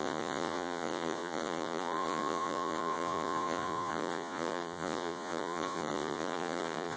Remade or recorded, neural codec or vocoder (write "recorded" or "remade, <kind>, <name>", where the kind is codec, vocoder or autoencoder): remade, vocoder, Vocos